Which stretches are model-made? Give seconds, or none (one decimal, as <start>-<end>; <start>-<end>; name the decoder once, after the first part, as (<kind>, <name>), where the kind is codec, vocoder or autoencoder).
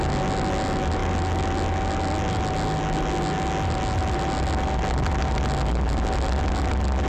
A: none